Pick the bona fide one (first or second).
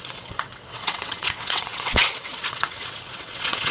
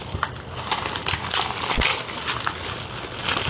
second